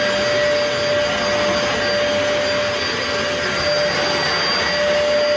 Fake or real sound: real